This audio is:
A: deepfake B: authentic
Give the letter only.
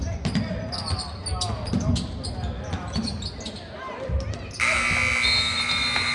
B